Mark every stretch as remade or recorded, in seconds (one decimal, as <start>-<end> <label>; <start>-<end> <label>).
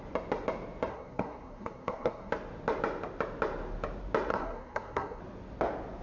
0.0-0.9 recorded; 0.9-2.3 remade; 2.3-4.3 recorded; 4.3-5.2 remade; 5.2-6.0 recorded